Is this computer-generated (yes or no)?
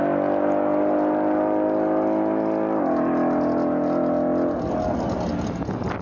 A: no